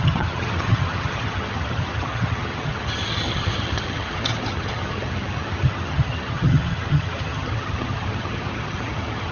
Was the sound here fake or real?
fake